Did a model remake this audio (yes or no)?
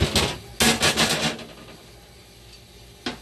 no